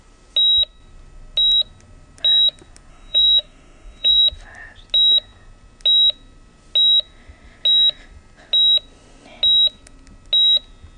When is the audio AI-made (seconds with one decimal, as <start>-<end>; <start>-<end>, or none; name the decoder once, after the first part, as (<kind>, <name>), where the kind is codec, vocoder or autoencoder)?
2.9-4.2 (autoencoder, DAC-VAE)